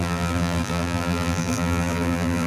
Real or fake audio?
fake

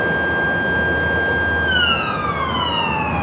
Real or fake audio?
real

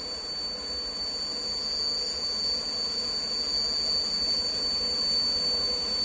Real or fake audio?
real